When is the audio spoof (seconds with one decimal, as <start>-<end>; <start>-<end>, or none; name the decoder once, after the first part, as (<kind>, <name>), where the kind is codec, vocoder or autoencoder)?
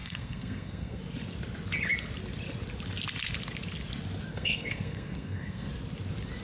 0.0-1.0 (codec, SNAC); 4.3-5.7